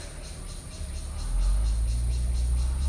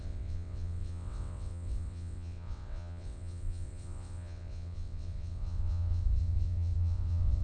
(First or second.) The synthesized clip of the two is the second